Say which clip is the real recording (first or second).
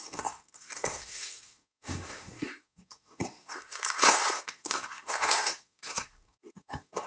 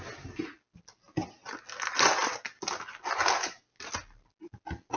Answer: second